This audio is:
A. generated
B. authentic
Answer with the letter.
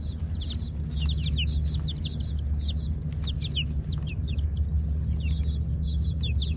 B